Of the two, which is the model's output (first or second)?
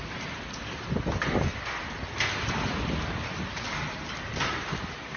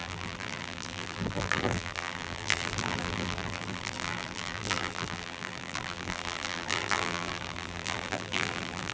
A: second